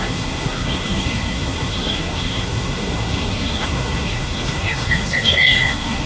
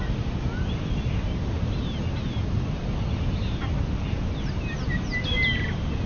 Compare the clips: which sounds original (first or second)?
second